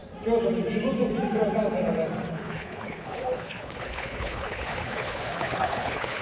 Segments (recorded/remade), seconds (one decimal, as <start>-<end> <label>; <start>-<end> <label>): 0.0-2.3 recorded; 2.3-6.2 remade